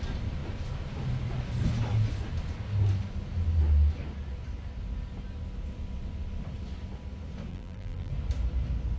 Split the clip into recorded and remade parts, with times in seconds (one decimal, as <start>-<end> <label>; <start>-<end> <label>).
0.0-7.5 recorded; 7.5-8.1 remade; 8.1-9.0 recorded

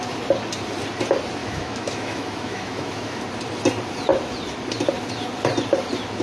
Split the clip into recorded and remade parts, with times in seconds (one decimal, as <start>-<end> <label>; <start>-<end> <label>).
0.0-1.4 recorded; 1.4-3.2 remade; 3.2-6.2 recorded

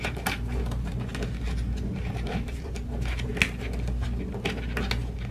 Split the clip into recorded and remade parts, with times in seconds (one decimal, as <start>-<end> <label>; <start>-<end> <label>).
0.0-1.1 remade; 1.1-1.9 recorded; 1.9-3.3 remade; 3.3-5.3 recorded

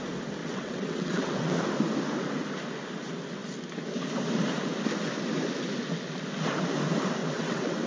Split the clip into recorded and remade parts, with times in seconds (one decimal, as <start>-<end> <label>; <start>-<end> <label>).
0.0-0.4 recorded; 0.4-1.6 remade; 1.6-7.2 recorded; 7.2-7.9 remade

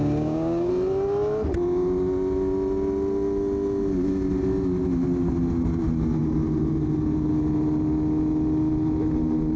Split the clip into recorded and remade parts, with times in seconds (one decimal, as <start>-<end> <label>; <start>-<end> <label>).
0.0-0.7 remade; 0.7-9.6 recorded